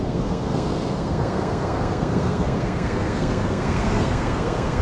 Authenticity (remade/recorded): remade